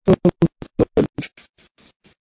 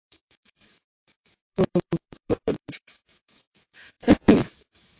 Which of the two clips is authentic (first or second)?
first